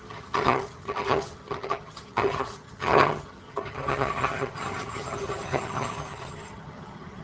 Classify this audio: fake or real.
fake